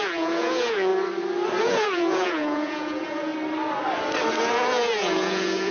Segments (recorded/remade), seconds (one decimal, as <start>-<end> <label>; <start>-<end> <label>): 0.0-0.9 remade; 0.9-1.6 recorded; 1.6-3.3 remade; 3.3-4.5 recorded; 4.5-5.7 remade